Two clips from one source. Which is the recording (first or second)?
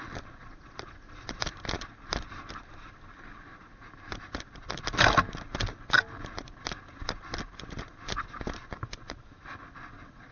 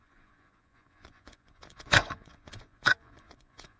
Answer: first